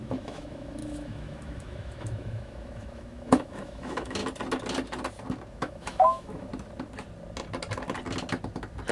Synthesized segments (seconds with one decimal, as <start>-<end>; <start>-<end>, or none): 0.0-4.2; 5.5-6.5